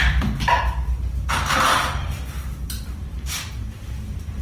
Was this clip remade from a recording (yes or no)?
yes